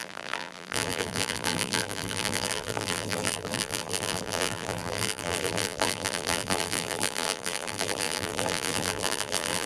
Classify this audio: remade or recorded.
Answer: remade